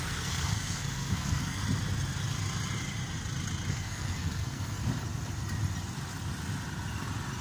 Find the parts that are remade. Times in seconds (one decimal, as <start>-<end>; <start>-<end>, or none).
0.0-1.6; 3.7-4.8